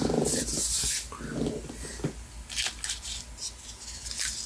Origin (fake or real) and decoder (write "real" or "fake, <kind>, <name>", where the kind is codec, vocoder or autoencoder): real